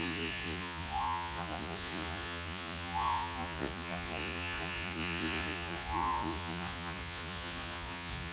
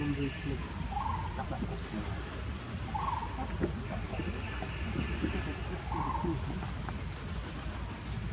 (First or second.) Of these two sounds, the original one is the second